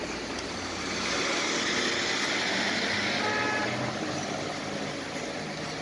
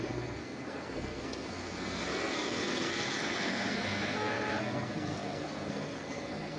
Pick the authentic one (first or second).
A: first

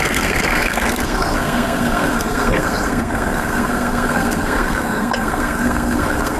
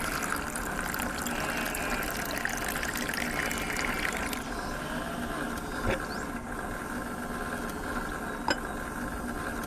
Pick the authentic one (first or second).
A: second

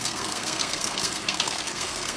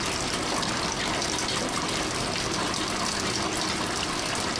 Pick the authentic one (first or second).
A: second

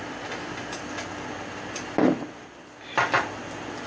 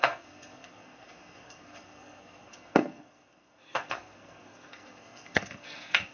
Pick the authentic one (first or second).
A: first